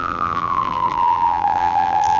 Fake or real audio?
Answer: fake